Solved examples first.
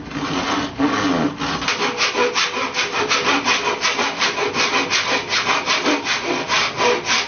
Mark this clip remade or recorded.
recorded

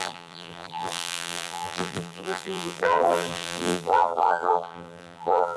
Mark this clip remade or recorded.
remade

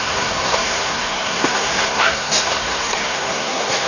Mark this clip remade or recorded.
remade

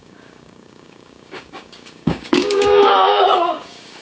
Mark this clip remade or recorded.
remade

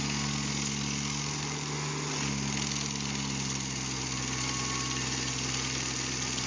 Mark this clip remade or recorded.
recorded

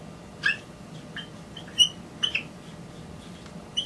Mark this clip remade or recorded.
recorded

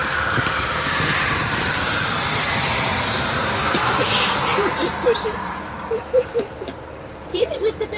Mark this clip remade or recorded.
remade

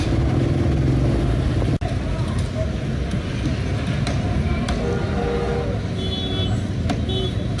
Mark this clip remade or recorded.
recorded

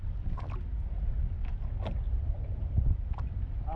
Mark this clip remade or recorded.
recorded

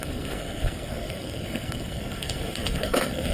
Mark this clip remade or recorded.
remade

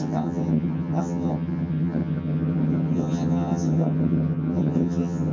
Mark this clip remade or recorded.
remade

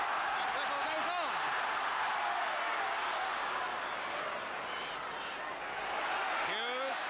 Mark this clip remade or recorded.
recorded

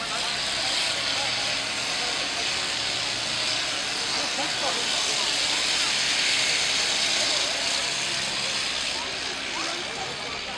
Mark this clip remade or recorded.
recorded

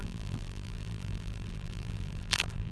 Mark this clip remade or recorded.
remade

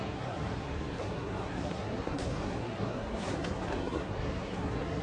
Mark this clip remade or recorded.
remade